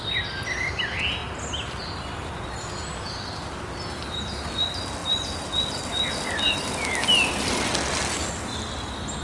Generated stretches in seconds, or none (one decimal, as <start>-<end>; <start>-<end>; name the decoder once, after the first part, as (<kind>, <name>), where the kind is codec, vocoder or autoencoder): none